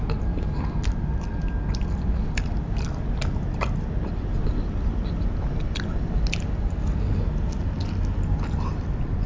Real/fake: real